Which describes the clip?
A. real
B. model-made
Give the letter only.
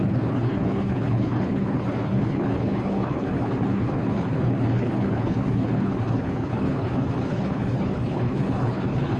B